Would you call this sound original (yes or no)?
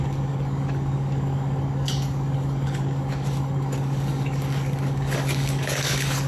no